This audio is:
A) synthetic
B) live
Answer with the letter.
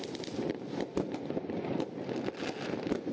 B